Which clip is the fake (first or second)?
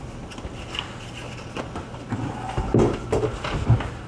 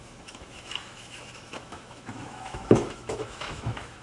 second